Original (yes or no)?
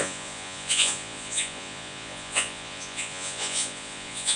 no